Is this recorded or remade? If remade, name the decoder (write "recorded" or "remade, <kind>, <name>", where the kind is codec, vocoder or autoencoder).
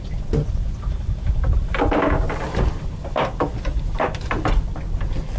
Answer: recorded